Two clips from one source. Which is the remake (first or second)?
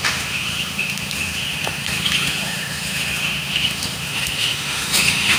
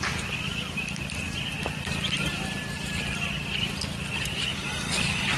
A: first